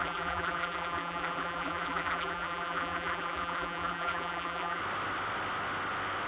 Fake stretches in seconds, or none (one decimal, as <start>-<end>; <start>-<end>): 0.0-4.8

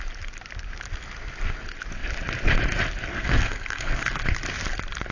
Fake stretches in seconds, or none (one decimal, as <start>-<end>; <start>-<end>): 3.1-4.2